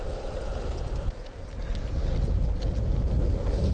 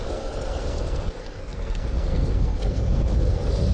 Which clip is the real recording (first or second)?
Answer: first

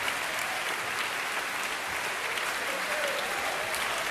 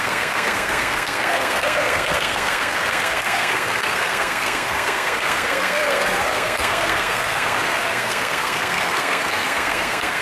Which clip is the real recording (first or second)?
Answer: first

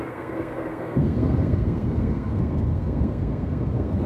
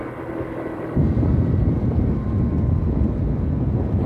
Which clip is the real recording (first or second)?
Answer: second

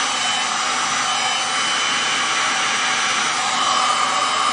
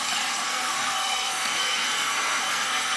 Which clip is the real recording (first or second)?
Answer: first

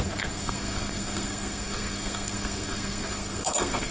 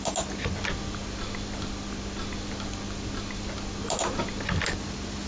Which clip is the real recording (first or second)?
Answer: second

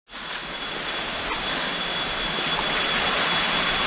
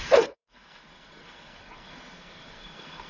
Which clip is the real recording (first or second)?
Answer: first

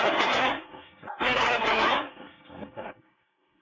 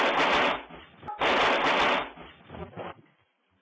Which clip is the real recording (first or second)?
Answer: second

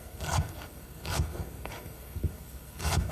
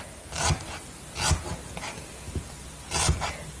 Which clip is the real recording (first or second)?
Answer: second